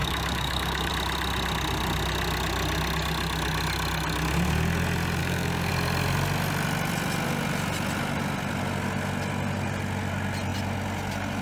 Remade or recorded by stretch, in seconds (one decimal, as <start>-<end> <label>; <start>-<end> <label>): 0.0-0.9 remade; 0.9-5.2 recorded; 5.2-5.7 remade; 5.7-11.4 recorded